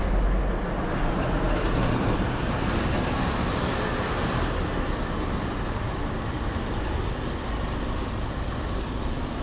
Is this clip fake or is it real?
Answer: real